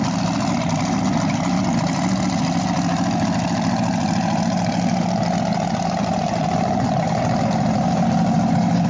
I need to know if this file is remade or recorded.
recorded